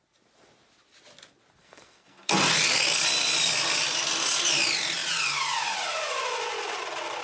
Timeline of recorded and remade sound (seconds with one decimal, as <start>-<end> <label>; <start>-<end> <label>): 0.0-1.6 recorded; 1.6-2.4 remade; 2.4-7.2 recorded